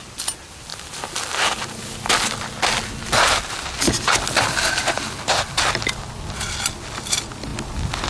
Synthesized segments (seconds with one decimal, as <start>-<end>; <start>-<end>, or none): none